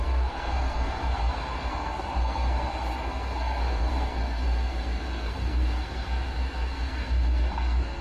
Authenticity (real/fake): fake